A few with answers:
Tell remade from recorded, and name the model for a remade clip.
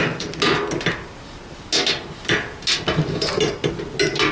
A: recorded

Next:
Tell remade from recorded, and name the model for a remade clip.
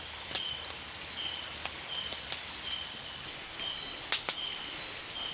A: recorded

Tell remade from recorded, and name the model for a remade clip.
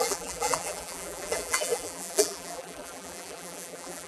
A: remade, vocoder, BigVGAN v2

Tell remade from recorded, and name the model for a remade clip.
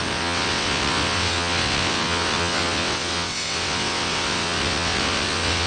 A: remade, vocoder, WaveNeXt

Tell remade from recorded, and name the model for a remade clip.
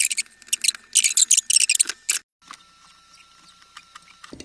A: recorded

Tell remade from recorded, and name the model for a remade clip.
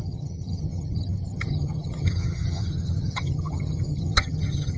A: remade, vocoder, HiFi-GAN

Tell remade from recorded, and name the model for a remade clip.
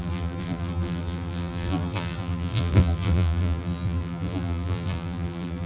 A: remade, vocoder, BigVGAN v2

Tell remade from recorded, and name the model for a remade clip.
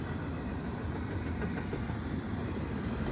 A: recorded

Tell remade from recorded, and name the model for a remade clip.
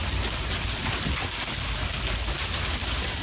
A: recorded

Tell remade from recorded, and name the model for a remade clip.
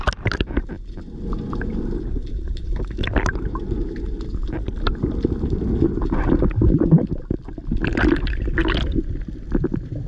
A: recorded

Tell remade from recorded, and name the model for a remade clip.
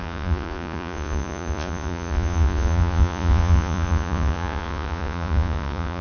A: remade, vocoder, Vocos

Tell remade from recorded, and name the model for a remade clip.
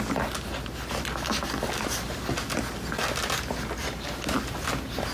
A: recorded